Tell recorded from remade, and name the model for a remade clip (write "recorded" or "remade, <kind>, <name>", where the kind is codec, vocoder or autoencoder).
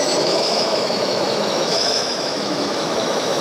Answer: remade, autoencoder, DAC-VAE